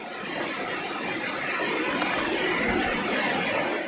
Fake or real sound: real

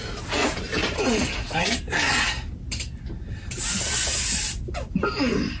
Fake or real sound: real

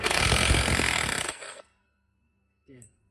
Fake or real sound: fake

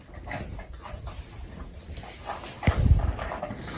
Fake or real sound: real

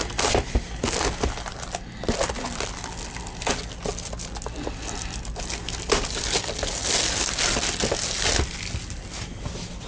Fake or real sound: real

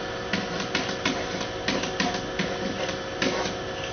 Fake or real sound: real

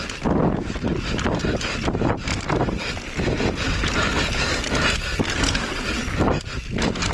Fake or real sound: real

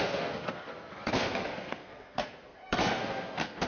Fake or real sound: fake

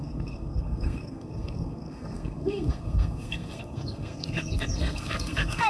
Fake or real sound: fake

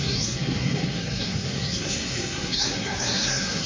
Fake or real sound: fake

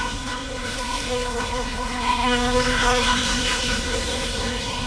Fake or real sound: fake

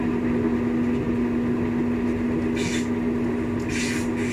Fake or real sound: real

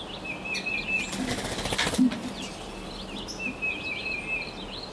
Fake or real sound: real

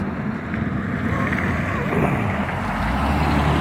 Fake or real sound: real